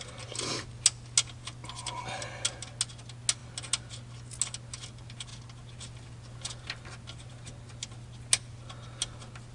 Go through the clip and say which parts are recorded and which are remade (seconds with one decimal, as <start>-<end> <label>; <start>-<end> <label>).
0.0-9.5 recorded